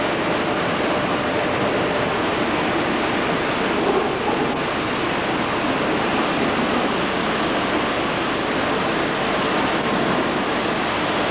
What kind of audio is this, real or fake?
real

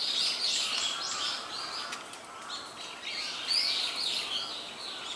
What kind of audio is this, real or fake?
real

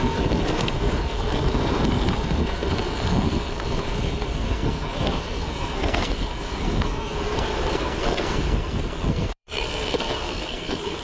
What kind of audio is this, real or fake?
fake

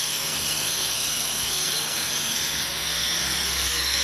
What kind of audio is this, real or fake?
fake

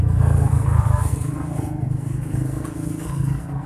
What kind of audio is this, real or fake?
fake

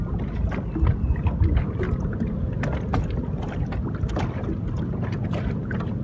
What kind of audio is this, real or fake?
real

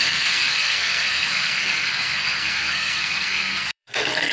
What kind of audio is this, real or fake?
fake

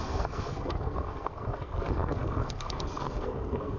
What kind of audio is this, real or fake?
fake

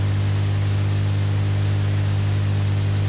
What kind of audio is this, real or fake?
real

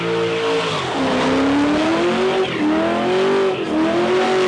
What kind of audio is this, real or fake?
real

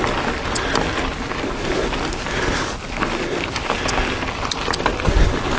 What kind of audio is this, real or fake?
real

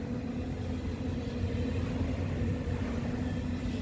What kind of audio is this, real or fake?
real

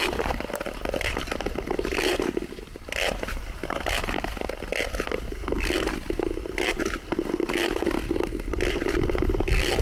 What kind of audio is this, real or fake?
real